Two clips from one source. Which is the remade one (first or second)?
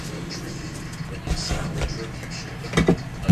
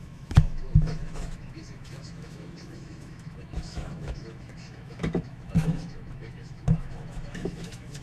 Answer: second